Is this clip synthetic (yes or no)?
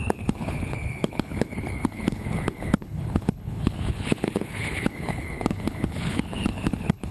yes